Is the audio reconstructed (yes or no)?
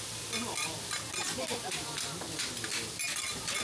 no